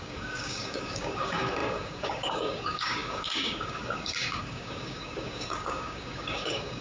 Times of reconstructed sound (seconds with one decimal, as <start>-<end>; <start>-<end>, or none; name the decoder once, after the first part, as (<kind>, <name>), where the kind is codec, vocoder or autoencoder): 0.0-6.8 (codec, DAC)